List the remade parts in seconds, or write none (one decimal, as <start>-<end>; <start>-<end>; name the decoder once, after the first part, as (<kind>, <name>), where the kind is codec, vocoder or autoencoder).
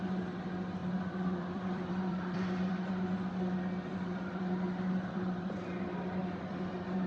0.8-2.9 (vocoder, BigVGAN v2); 3.9-5.4; 6.2-7.1